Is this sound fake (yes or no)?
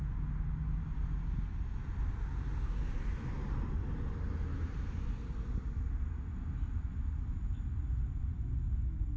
no